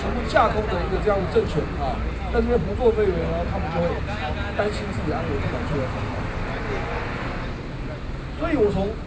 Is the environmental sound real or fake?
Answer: real